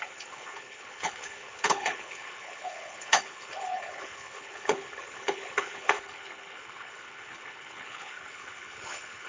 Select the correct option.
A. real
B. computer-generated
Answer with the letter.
B